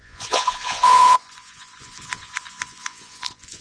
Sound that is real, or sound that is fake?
fake